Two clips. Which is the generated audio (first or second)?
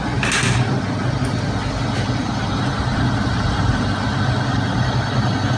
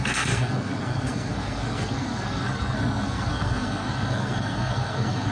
second